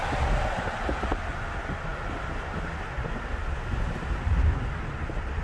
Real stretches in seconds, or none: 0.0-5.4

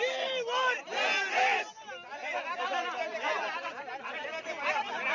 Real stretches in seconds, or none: 0.0-5.1

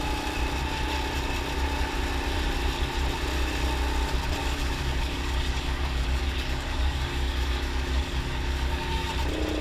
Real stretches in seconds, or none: 0.0-4.4; 9.1-9.6

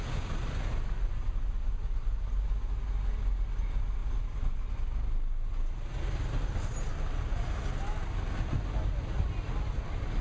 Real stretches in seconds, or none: 0.0-10.2

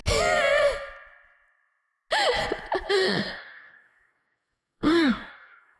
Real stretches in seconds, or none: 0.0-2.9

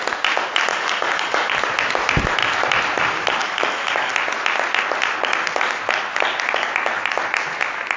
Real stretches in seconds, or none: 0.0-0.7; 1.6-3.4; 4.1-8.0